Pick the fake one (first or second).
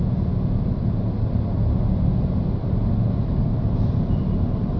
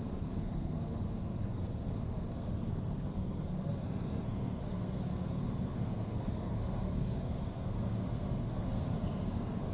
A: second